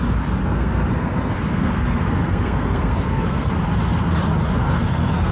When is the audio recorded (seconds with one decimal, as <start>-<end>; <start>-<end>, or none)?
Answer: 0.0-0.4; 3.5-4.6